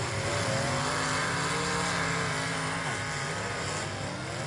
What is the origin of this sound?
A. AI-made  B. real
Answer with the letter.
B